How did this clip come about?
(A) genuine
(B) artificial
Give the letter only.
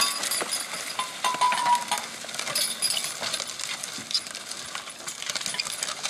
A